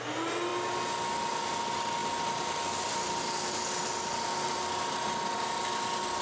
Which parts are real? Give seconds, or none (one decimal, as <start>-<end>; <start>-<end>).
0.0-6.2